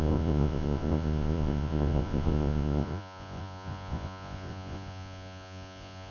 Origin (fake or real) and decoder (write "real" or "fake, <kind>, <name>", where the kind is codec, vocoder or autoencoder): fake, vocoder, Vocos